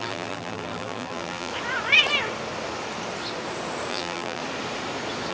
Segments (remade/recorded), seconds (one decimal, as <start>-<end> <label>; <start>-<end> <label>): 0.0-1.5 remade; 1.5-3.9 recorded; 3.9-4.4 remade; 4.4-5.3 recorded